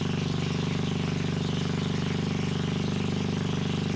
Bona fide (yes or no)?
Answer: yes